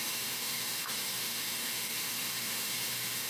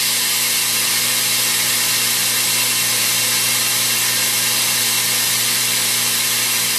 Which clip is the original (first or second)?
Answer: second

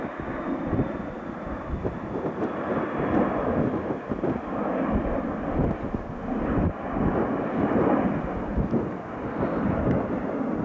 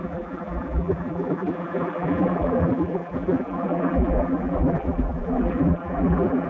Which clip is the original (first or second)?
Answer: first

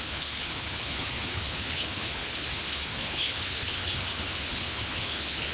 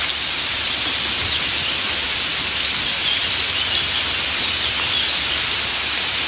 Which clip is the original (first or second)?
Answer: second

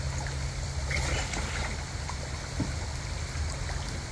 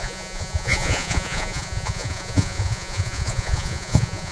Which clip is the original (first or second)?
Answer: first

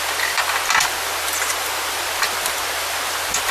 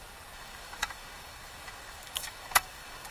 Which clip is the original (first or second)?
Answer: first